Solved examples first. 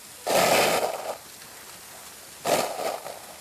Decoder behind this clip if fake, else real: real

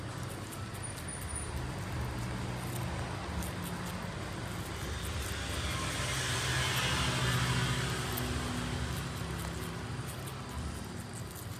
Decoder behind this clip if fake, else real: real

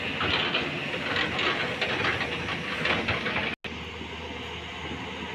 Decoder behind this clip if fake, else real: real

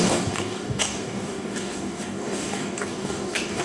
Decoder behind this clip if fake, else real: fake, codec, DAC